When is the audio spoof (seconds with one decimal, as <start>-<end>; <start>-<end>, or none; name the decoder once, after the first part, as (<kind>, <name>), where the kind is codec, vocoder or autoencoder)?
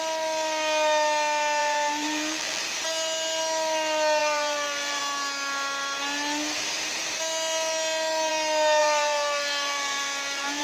1.6-2.6 (vocoder, BigVGAN v2); 4.2-5.0; 8.8-10.6